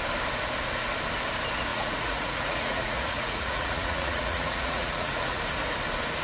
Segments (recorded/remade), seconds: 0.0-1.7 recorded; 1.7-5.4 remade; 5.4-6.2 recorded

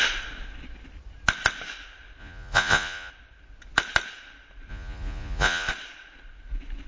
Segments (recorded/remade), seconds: 0.0-2.2 recorded; 2.2-3.1 remade; 3.1-4.7 recorded; 4.7-5.7 remade; 5.7-6.9 recorded